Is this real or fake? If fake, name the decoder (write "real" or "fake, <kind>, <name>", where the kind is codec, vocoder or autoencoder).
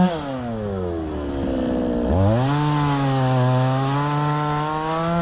real